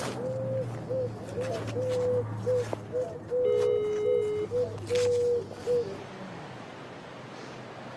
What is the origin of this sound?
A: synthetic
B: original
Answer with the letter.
B